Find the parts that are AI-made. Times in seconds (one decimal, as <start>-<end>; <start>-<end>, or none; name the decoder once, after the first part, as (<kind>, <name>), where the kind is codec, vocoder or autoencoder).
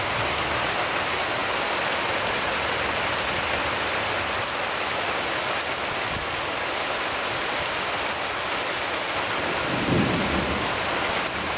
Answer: none